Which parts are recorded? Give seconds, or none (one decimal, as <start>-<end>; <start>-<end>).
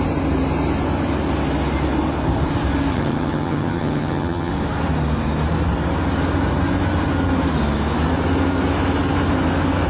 0.0-2.9; 4.5-9.9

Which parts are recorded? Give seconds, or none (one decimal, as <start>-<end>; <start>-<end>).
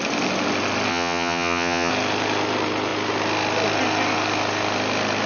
0.0-0.9; 1.9-5.3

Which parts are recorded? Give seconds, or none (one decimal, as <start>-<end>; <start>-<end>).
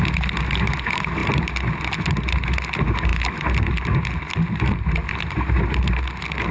0.0-6.5